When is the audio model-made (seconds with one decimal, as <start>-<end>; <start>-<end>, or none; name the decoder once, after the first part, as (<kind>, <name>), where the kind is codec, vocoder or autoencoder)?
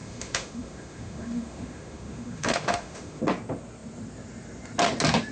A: 0.0-3.2 (autoencoder, DAC-VAE)